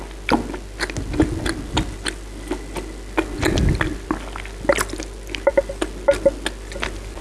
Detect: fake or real real